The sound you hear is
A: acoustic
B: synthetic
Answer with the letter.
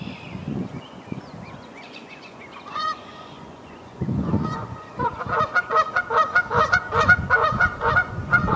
B